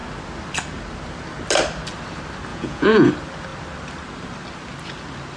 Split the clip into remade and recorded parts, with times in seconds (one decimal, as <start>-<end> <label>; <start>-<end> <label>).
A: 0.0-2.5 recorded; 2.5-3.1 remade; 3.1-5.4 recorded